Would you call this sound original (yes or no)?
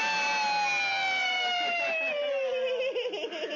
yes